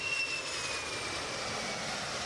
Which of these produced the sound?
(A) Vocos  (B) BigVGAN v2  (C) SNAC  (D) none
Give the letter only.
D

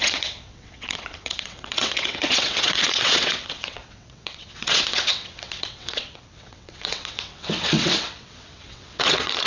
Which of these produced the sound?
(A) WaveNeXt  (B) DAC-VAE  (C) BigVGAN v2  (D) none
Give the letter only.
A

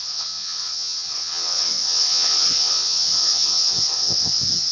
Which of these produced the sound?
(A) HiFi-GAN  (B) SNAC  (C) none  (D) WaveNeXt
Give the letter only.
D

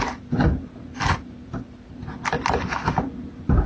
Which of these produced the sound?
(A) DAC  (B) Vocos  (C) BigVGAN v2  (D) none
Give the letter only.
D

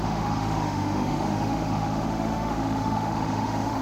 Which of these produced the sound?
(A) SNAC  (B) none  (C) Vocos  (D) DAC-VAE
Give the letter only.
D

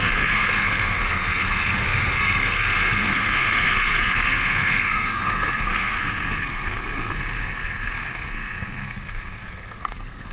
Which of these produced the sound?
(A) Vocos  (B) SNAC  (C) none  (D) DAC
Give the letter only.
B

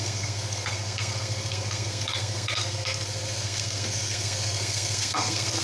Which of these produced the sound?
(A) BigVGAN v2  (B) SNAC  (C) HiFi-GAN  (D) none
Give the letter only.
B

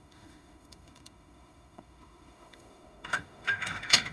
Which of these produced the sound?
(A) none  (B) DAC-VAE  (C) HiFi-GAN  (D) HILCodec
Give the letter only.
B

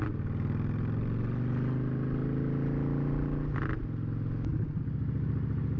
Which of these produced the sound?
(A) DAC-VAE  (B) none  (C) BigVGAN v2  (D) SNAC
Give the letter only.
B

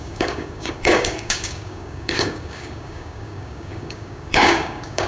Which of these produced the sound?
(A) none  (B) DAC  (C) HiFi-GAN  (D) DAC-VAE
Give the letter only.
B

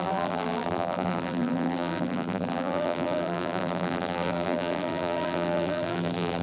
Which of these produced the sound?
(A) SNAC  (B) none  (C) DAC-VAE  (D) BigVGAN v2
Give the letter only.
D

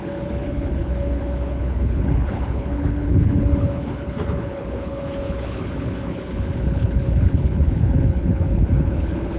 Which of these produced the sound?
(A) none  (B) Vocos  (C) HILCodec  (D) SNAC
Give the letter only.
C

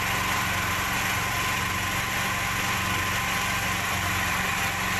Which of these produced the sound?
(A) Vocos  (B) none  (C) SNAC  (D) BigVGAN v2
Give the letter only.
B